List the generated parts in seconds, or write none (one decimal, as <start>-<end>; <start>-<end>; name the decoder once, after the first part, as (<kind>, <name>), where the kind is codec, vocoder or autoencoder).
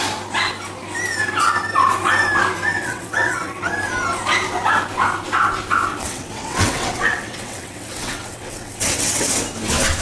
2.8-3.7 (vocoder, WaveNeXt); 5.9-9.3